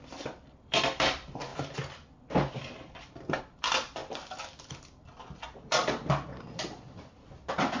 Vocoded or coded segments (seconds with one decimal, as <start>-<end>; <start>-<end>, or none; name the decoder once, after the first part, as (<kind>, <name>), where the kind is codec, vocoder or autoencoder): 0.0-7.8 (vocoder, BigVGAN v2)